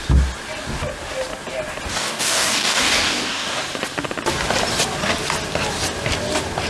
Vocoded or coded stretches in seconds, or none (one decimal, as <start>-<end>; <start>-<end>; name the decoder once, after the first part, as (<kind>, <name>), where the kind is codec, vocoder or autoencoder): 1.9-3.6 (codec, DAC)